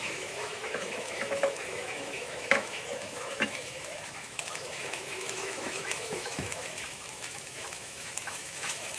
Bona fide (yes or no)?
no